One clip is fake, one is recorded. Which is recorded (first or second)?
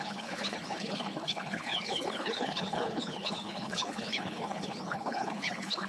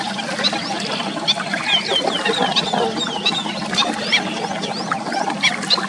second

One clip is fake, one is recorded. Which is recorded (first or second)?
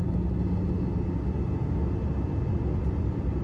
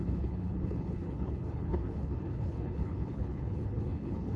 first